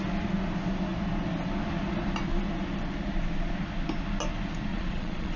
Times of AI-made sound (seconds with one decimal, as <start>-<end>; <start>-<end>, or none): 4.7-5.4